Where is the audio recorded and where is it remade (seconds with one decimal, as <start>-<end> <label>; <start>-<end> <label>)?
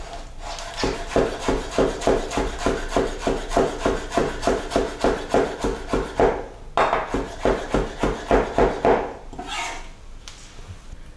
0.0-11.2 recorded